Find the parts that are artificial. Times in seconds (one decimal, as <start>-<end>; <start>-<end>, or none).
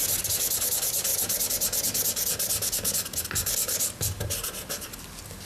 none